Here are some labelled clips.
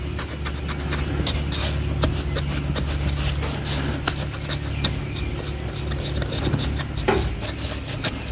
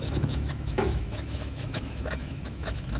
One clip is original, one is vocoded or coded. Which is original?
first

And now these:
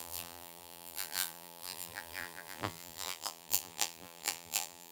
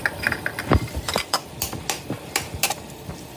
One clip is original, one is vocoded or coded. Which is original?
second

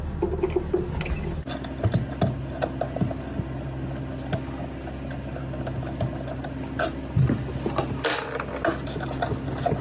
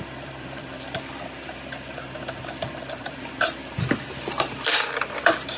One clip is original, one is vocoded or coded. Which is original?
first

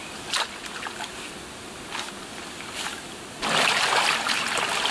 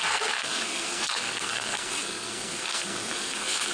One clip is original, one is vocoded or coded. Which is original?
first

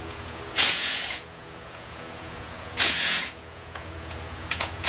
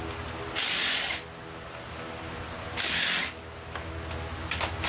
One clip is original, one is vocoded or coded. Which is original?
second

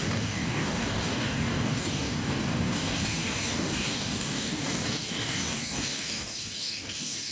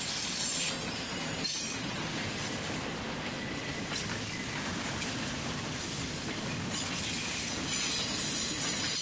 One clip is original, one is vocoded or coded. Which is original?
second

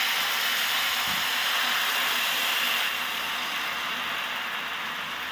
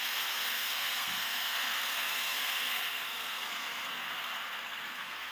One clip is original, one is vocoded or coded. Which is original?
first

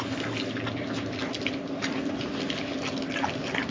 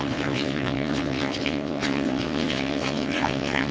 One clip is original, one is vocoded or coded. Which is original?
first